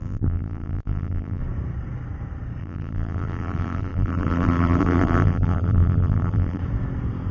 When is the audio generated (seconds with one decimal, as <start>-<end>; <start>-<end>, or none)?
0.0-1.4; 2.6-6.6